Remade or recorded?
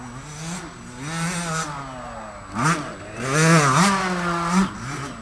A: recorded